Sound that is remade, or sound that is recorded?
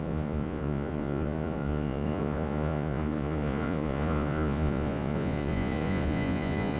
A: remade